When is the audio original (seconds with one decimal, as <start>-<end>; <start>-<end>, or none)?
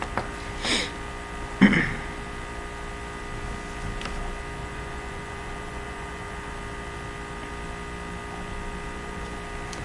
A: 0.0-4.6; 6.5-9.8